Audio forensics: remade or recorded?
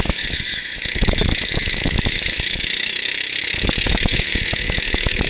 remade